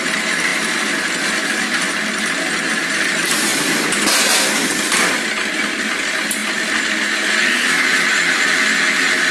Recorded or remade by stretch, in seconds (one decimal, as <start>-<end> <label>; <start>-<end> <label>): 0.0-9.3 recorded